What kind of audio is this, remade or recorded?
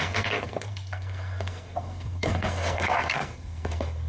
remade